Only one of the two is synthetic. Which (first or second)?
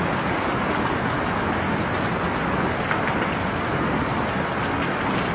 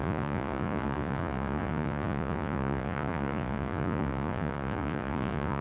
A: second